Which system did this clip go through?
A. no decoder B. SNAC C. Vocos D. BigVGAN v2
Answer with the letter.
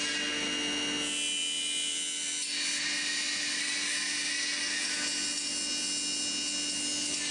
A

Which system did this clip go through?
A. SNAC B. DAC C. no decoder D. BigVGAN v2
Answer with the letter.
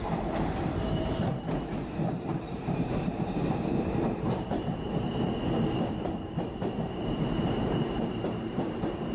D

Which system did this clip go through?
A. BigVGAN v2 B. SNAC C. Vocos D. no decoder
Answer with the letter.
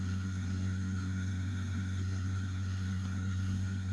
B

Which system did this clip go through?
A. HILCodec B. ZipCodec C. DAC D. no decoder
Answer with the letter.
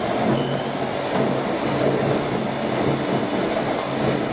D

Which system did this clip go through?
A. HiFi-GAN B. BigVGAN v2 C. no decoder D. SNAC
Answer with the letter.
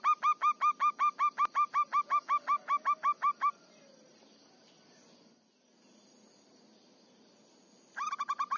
C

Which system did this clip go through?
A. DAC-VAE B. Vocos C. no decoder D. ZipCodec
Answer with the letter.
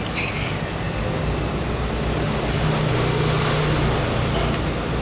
C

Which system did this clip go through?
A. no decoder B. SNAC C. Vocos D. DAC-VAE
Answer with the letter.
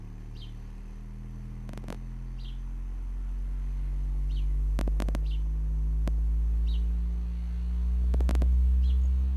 A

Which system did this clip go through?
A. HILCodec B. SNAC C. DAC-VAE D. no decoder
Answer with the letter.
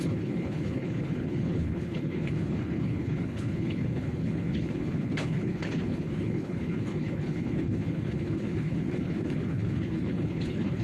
A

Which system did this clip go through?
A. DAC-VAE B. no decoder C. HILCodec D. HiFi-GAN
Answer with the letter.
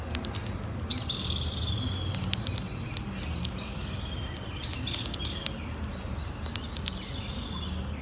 B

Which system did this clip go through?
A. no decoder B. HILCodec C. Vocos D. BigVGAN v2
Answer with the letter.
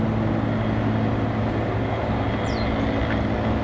A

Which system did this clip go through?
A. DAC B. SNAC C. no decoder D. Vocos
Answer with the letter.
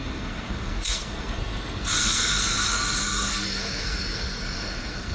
B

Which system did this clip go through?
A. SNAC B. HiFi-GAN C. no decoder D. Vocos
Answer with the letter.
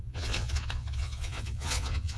D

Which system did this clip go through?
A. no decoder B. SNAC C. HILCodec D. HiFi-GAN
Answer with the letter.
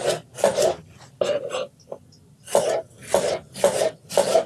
A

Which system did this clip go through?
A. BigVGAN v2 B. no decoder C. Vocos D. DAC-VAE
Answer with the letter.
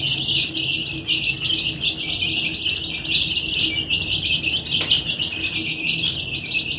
B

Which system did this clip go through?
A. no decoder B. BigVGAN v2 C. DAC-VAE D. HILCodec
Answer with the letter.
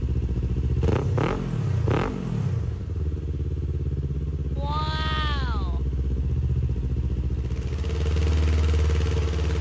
A